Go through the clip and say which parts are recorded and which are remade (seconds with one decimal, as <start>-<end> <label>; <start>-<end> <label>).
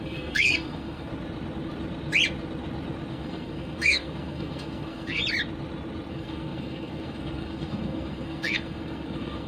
0.0-1.1 remade; 1.1-3.1 recorded; 3.1-5.2 remade; 5.2-6.1 recorded; 6.1-9.5 remade